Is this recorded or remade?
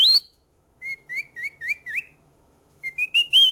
remade